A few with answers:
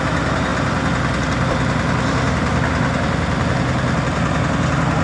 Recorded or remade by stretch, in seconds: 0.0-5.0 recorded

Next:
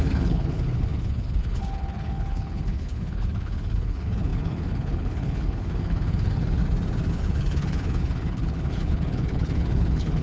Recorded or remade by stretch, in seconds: 0.0-6.6 remade; 6.6-7.1 recorded; 7.1-10.2 remade

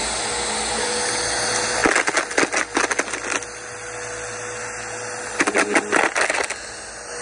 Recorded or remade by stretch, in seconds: 0.0-7.2 recorded

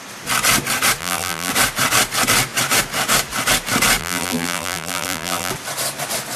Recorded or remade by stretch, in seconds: 0.0-1.0 recorded; 1.0-1.5 remade; 1.5-4.0 recorded; 4.0-5.5 remade; 5.5-6.4 recorded

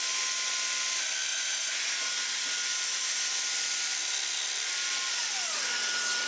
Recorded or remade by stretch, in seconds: 0.0-1.3 recorded; 1.3-1.9 remade; 1.9-6.3 recorded